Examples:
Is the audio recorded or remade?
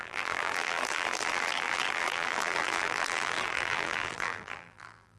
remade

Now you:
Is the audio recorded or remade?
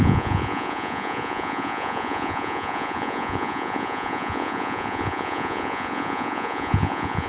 remade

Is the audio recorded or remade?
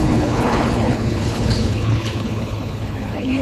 remade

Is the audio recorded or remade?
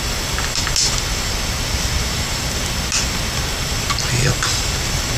recorded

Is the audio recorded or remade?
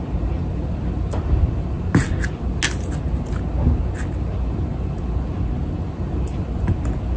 recorded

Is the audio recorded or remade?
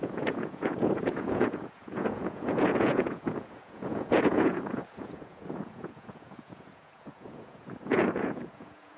remade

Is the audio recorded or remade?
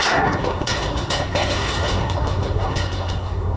remade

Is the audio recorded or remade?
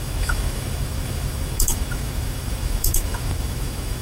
remade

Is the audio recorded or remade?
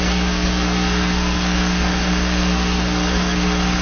remade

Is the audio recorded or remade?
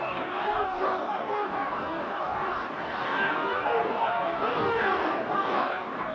remade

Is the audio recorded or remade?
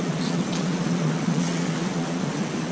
remade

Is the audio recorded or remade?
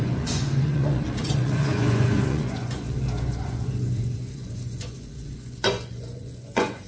remade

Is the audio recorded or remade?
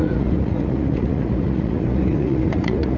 remade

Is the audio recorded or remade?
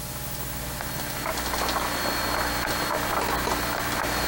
recorded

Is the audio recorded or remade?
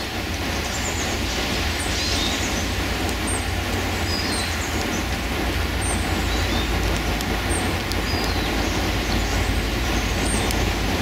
recorded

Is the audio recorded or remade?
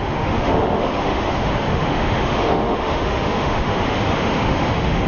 remade